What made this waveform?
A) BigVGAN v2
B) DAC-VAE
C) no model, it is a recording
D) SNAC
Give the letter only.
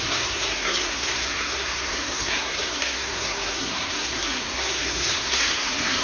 D